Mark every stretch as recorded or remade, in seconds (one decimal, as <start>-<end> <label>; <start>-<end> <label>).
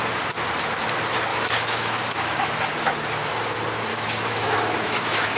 0.0-1.3 recorded; 1.3-2.6 remade; 2.6-3.9 recorded; 3.9-5.4 remade